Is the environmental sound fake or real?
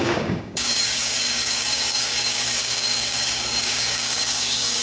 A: fake